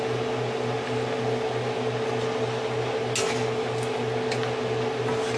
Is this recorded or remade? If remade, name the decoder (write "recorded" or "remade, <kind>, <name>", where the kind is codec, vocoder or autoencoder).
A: recorded